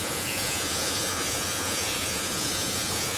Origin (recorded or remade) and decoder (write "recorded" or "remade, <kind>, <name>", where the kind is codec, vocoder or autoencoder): remade, vocoder, Vocos